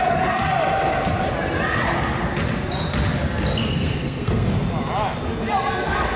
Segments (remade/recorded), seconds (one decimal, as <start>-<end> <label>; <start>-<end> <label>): 0.0-3.6 recorded; 3.6-4.5 remade; 4.5-6.2 recorded